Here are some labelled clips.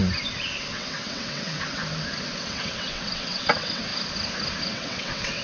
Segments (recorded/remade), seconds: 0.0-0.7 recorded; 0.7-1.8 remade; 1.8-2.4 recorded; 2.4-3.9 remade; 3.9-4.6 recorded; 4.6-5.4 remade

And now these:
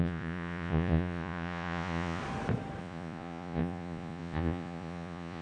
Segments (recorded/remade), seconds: 0.0-2.2 remade; 2.2-2.8 recorded; 2.8-5.4 remade